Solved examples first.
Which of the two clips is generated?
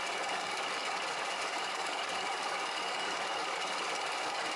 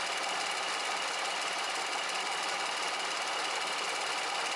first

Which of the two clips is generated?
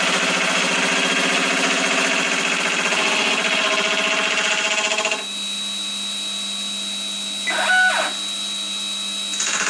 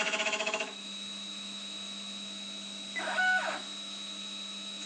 second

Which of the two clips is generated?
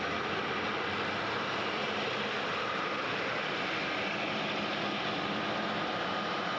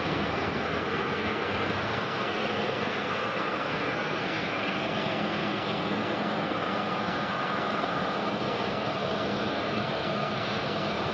second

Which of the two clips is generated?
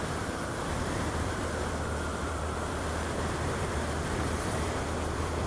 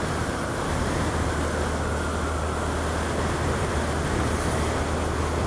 first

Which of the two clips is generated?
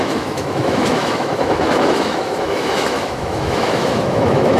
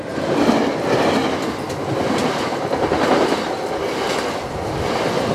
first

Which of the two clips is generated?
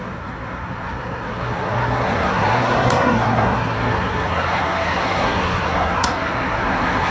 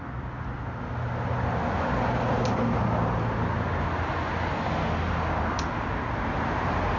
first